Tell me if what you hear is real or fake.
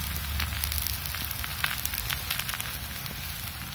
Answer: real